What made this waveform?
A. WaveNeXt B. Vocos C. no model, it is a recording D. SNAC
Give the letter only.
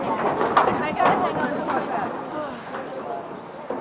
C